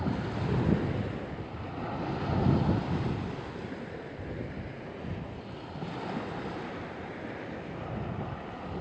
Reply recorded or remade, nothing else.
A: recorded